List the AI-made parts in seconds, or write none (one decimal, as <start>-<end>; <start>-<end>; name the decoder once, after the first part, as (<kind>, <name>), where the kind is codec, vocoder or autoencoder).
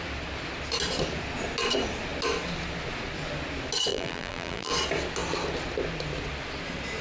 3.9-4.7 (vocoder, BigVGAN v2)